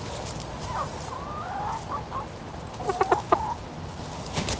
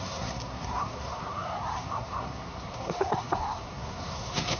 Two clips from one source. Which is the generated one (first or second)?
second